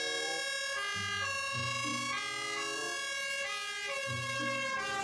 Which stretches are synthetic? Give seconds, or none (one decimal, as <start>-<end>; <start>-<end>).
none